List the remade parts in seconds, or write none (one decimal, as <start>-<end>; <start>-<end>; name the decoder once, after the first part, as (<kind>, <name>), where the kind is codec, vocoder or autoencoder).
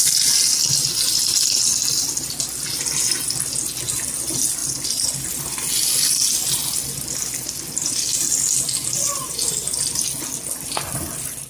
none